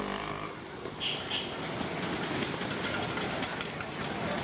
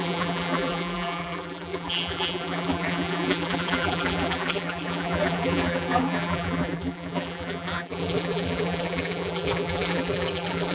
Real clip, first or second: first